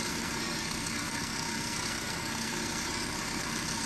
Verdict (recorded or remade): remade